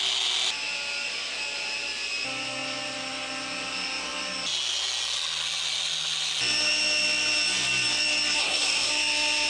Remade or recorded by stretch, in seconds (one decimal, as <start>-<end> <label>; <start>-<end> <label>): 0.0-8.4 recorded; 8.4-8.9 remade; 8.9-9.5 recorded